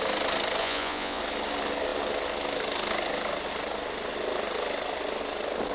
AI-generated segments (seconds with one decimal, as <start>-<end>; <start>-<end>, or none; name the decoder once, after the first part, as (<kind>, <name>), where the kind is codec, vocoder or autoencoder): 0.6-1.2 (vocoder, Vocos)